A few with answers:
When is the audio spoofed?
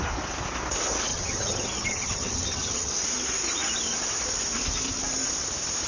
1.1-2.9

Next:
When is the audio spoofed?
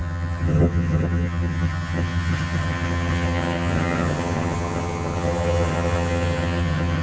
0.0-7.0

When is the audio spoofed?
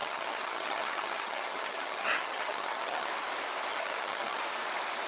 0.0-3.1; 3.7-4.4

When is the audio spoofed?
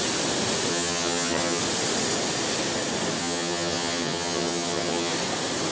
0.7-1.6; 3.2-5.1